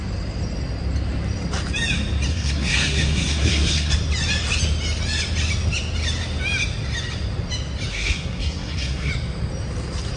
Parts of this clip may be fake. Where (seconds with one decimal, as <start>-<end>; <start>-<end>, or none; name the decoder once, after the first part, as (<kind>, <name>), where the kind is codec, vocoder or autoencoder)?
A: 2.3-3.9 (codec, SNAC); 7.9-9.1